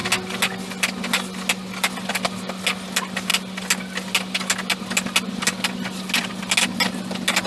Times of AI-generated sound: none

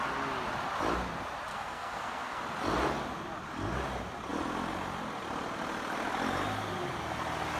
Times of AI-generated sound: 1.5-2.4 (codec, SNAC)

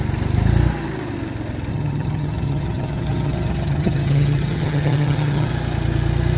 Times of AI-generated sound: 1.7-5.5 (vocoder, HiFi-GAN)

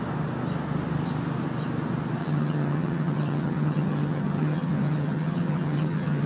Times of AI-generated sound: 2.2-6.3 (vocoder, HiFi-GAN)

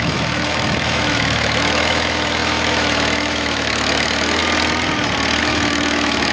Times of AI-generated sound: 0.0-4.4 (autoencoder, DAC-VAE); 5.4-6.3

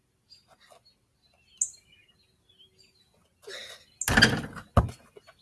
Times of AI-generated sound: none

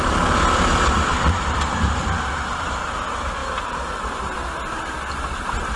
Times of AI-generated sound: none